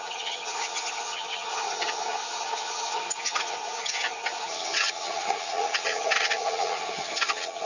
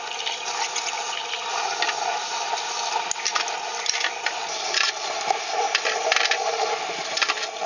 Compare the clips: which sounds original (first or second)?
second